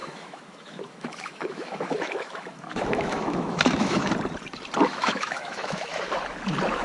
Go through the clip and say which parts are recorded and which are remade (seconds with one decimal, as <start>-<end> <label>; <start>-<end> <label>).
0.0-4.1 remade; 4.1-4.9 recorded; 4.9-6.1 remade; 6.1-6.8 recorded